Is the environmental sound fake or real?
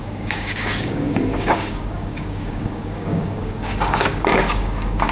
fake